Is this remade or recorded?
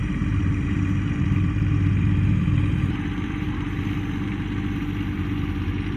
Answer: remade